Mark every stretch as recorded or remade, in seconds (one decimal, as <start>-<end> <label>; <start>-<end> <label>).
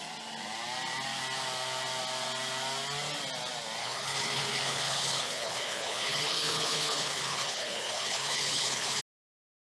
0.0-3.8 recorded; 3.8-9.0 remade; 9.0-9.8 recorded